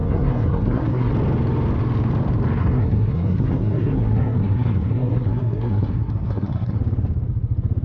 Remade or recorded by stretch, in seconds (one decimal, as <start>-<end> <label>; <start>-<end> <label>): 0.0-1.1 remade; 1.1-2.6 recorded; 2.6-6.8 remade; 6.8-7.8 recorded